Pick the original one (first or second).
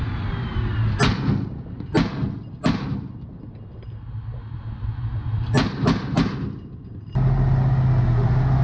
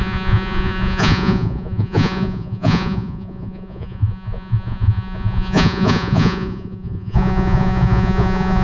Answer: first